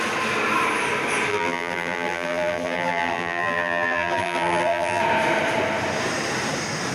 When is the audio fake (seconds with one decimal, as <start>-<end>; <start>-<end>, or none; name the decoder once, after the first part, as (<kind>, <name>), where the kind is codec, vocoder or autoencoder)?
1.3-5.0 (vocoder, BigVGAN v2)